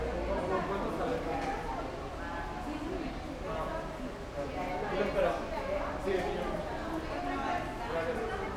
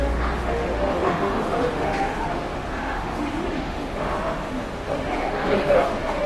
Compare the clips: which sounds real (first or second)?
first